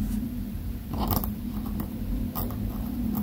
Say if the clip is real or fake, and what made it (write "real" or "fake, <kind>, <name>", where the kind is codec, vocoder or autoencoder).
fake, vocoder, BigVGAN v2